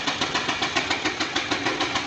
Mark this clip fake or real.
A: fake